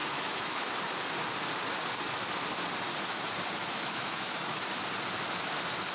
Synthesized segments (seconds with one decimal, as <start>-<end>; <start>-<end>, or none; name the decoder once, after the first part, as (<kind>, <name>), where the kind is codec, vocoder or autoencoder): 0.0-0.8 (autoencoder, DAC-VAE); 3.6-4.6